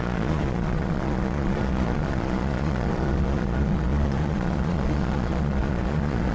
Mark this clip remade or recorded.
remade